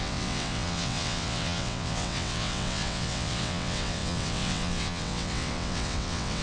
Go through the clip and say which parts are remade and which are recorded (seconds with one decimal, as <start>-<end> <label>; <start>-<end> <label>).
0.0-6.4 remade

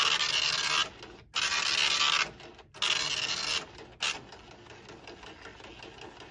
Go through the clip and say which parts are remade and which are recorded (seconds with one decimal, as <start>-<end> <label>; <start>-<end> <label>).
0.0-6.3 recorded